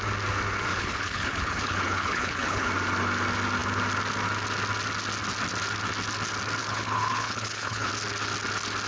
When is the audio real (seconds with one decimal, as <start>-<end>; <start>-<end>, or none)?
0.0-0.7; 2.7-6.6; 7.9-8.9